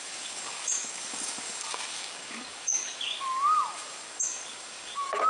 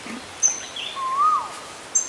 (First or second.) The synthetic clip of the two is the first